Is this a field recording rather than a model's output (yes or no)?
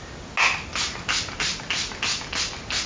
yes